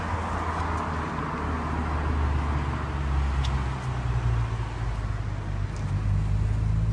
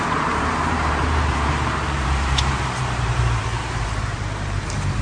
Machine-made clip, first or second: second